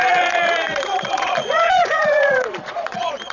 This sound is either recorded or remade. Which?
remade